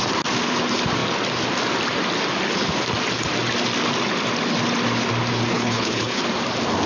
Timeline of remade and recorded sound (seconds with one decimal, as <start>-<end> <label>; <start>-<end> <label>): 0.0-5.5 recorded; 5.5-6.2 remade; 6.2-6.9 recorded